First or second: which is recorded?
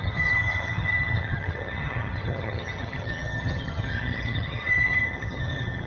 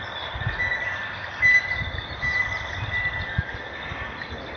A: second